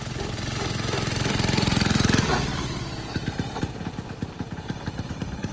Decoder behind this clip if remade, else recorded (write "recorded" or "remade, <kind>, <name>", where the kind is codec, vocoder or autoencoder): remade, vocoder, BigVGAN v2